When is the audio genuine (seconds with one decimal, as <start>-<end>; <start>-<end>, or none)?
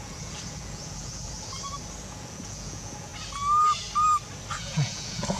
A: 1.3-2.0; 3.1-4.5